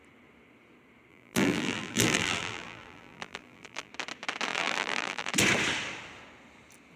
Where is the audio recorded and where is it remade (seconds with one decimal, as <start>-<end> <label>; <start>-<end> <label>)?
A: 0.0-1.1 recorded; 1.1-3.9 remade; 3.9-4.5 recorded; 4.5-5.3 remade; 5.3-7.0 recorded